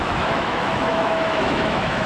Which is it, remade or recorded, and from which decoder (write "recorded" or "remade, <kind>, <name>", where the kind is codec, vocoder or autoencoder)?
remade, autoencoder, DAC-VAE